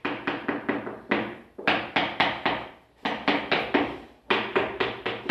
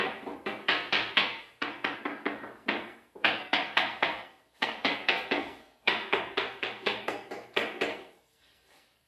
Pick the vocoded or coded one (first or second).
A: second